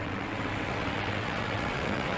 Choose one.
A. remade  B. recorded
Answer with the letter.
A